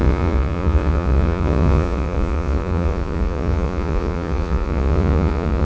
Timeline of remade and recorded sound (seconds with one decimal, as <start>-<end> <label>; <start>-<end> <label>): 0.0-5.6 remade